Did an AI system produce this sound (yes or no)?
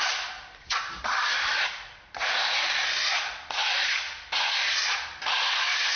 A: no